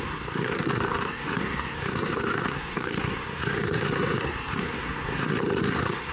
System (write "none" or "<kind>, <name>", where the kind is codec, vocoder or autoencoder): codec, SNAC